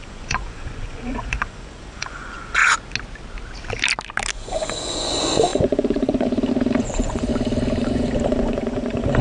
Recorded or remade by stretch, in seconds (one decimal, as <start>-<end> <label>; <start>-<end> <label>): 0.0-2.6 remade; 2.6-4.3 recorded; 4.3-7.3 remade; 7.3-7.8 recorded; 7.8-9.2 remade